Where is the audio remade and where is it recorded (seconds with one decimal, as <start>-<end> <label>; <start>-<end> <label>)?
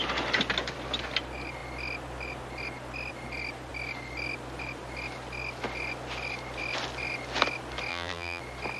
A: 0.0-7.9 recorded; 7.9-8.4 remade; 8.4-8.8 recorded